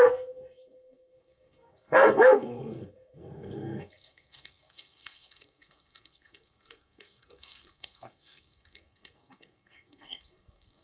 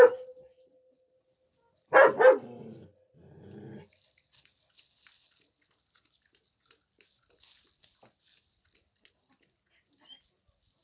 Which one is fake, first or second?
first